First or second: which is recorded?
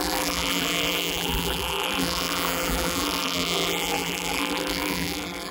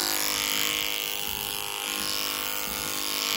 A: second